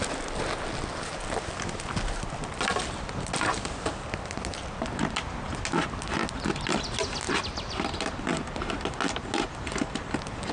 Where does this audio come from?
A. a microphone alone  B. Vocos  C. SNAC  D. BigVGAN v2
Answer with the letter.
A